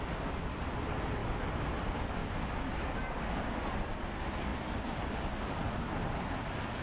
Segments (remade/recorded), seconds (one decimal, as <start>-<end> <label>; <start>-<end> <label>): 0.0-1.2 remade; 1.2-1.8 recorded; 1.8-2.2 remade; 2.2-3.5 recorded; 3.5-6.8 remade